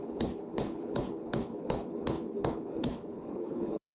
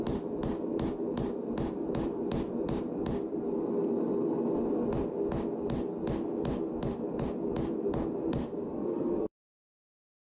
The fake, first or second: first